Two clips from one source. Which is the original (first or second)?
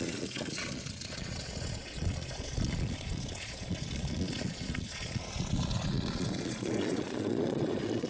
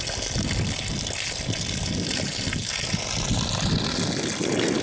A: second